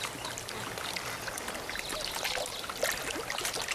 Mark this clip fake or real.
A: real